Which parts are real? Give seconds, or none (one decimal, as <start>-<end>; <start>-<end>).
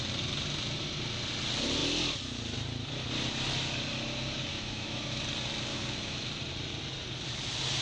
0.0-4.5; 5.2-5.7; 6.3-7.8